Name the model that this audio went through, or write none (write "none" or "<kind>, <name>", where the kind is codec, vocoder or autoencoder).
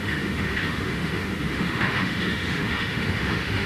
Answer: autoencoder, DAC-VAE